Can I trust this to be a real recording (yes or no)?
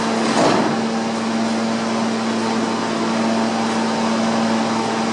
yes